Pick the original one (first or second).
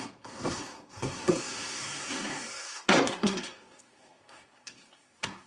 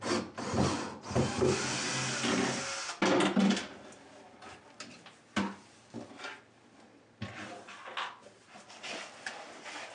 second